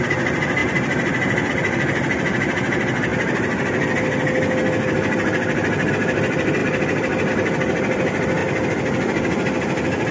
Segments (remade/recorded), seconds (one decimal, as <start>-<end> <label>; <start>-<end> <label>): 0.0-10.1 recorded